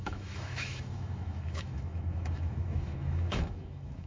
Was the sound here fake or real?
fake